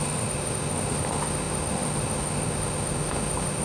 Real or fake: fake